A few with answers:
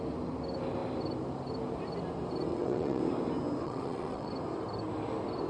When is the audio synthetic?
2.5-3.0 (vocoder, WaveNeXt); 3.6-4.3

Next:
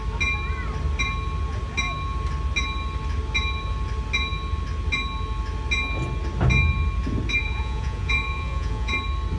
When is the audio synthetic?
7.4-8.9 (vocoder, Vocos)

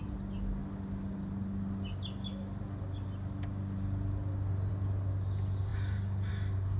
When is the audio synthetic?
none